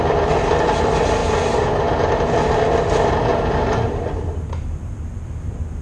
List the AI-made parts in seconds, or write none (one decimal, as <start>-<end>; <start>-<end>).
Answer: 1.2-2.3; 3.3-4.9